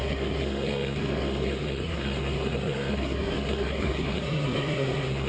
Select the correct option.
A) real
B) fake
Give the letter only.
B